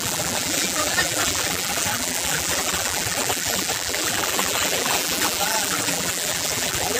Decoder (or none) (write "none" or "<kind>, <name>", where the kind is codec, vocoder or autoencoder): vocoder, BigVGAN v2